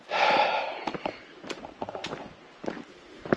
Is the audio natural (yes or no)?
yes